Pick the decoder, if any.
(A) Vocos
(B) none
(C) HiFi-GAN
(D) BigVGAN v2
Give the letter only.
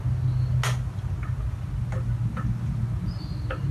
B